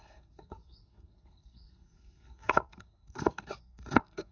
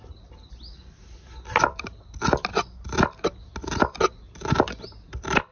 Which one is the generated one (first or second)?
first